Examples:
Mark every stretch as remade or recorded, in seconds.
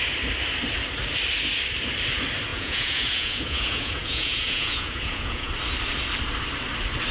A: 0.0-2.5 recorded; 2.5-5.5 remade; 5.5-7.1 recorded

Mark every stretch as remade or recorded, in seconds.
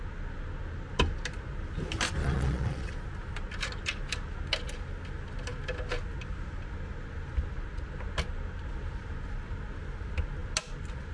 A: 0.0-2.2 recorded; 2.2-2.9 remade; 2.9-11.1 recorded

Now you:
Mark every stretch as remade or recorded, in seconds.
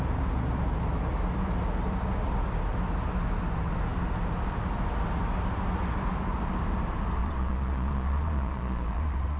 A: 0.0-7.2 recorded; 7.2-9.4 remade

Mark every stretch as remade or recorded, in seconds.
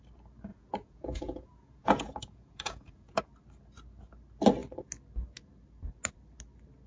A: 0.0-0.5 recorded; 0.5-3.2 remade; 3.2-6.9 recorded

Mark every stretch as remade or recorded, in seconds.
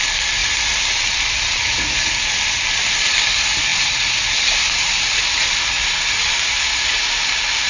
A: 0.0-7.7 recorded